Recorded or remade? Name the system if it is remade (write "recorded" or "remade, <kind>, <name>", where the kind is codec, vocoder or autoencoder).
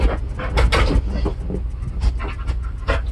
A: recorded